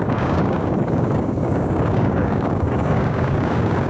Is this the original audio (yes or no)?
no